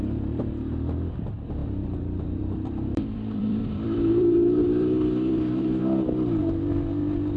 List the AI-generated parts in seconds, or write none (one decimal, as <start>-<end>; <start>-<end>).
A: 1.6-5.8